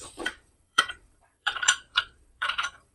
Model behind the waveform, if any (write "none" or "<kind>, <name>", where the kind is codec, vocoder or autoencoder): vocoder, Vocos